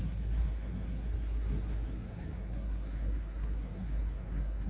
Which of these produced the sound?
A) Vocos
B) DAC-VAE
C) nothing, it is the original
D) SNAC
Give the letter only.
D